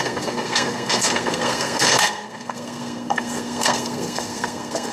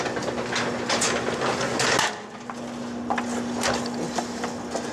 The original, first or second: second